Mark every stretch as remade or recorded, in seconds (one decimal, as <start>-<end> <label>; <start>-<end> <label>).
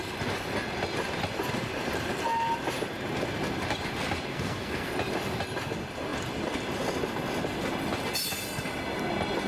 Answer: 0.0-4.3 recorded; 4.3-4.9 remade; 4.9-9.5 recorded